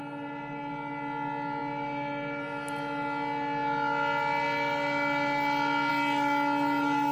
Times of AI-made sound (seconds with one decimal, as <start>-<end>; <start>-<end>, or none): none